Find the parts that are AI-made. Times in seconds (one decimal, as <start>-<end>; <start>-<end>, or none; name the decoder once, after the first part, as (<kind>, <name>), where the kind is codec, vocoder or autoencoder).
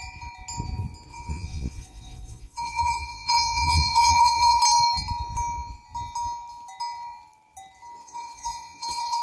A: 1.1-4.6 (vocoder, Vocos); 8.0-9.2